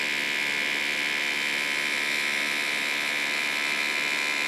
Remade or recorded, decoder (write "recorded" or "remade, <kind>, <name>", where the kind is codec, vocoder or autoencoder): recorded